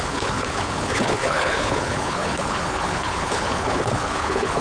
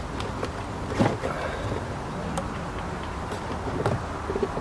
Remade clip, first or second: first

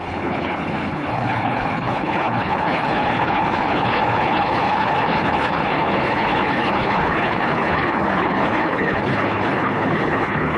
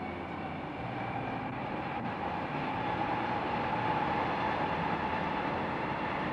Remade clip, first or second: first